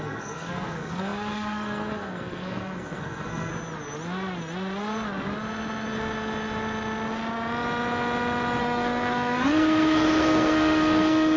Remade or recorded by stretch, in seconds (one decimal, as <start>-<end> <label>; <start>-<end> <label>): 0.0-3.5 remade; 3.5-8.6 recorded; 8.6-11.4 remade